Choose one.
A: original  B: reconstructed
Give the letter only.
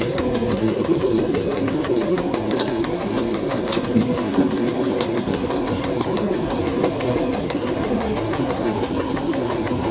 B